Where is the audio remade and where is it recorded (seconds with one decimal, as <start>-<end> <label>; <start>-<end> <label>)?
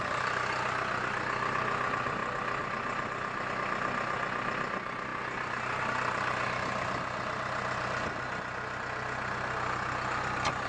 0.0-10.7 recorded